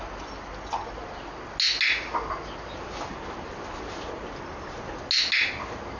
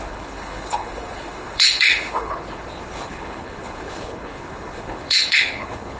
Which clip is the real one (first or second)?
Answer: first